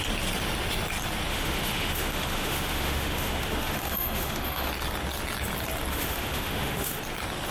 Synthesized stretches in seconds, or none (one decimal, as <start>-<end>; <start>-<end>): 1.3-4.7; 5.9-7.0